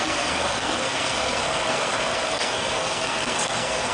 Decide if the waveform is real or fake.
fake